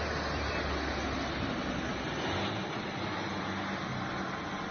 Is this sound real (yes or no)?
yes